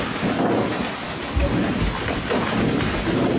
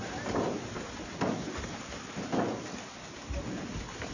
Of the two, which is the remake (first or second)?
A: second